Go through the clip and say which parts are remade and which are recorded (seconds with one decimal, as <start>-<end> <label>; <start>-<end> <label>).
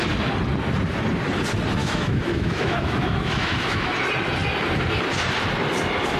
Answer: 0.0-1.8 recorded; 1.8-3.9 remade; 3.9-6.2 recorded